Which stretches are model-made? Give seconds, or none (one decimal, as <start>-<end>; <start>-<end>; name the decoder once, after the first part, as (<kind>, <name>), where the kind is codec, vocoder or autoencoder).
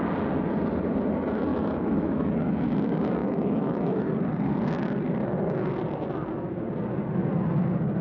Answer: 1.5-2.3 (autoencoder, DAC-VAE); 3.2-4.0